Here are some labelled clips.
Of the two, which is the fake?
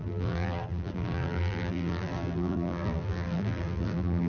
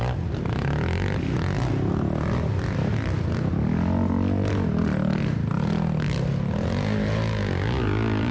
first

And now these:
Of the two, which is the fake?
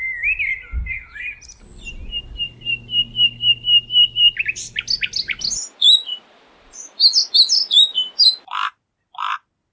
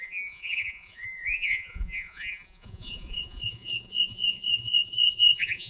second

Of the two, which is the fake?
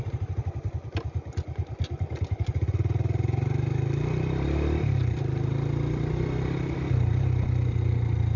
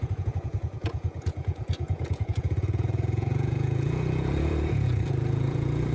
second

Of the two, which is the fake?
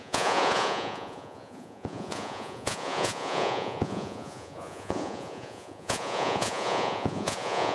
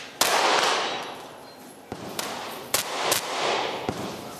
first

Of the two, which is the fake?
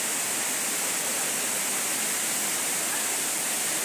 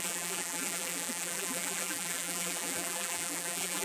second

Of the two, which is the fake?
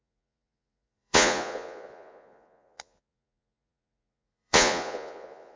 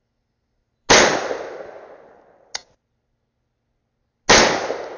first